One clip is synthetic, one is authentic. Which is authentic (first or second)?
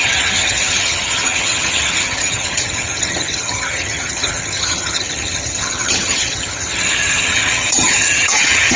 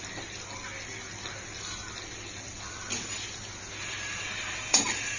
second